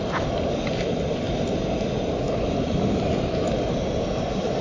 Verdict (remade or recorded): recorded